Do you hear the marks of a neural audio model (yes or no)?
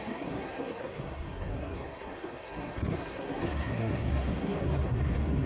yes